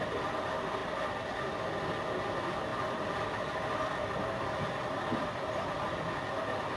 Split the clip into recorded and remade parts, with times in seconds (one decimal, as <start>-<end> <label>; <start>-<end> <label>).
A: 0.0-6.8 recorded